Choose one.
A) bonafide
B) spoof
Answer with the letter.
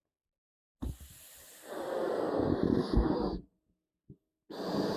A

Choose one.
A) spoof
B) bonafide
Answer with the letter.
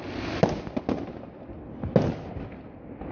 B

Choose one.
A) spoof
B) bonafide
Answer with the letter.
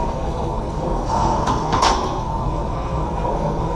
A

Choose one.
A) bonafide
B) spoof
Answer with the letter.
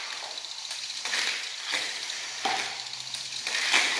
A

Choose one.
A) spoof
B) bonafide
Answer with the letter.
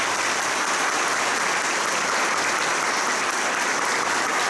B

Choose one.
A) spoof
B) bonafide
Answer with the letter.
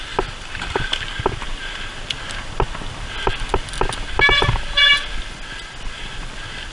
B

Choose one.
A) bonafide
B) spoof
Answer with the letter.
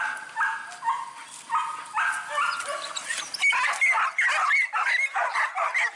A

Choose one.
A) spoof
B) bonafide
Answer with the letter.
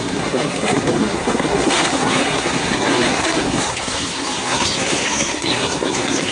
A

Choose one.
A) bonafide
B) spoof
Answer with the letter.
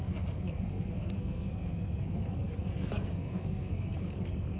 B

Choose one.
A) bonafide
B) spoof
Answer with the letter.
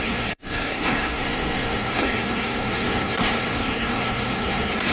B